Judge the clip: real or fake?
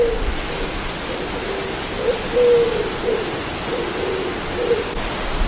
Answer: real